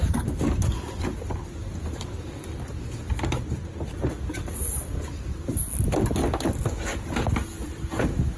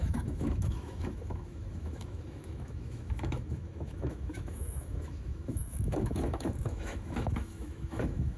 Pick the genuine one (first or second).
first